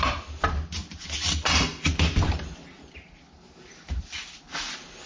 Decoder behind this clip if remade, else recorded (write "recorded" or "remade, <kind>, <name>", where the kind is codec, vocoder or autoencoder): recorded